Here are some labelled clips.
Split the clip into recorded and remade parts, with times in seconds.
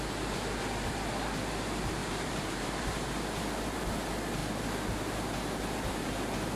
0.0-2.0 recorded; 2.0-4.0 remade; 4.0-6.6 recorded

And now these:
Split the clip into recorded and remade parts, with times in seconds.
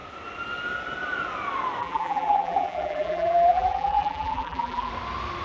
0.0-1.8 recorded; 1.8-4.9 remade; 4.9-5.4 recorded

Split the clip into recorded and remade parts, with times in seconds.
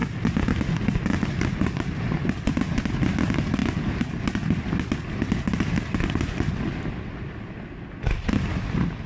0.0-9.1 recorded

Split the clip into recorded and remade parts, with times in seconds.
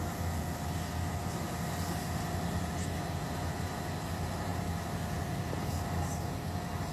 0.0-6.9 recorded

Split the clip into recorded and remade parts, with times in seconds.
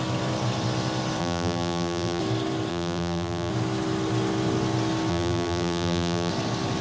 0.0-1.2 recorded; 1.2-2.2 remade; 2.2-2.7 recorded; 2.7-3.5 remade; 3.5-5.1 recorded; 5.1-6.3 remade; 6.3-6.8 recorded